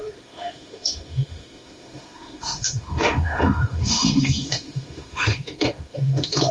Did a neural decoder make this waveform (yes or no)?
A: yes